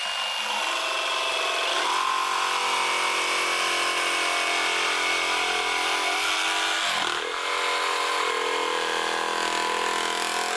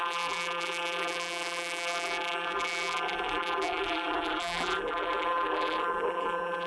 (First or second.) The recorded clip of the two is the first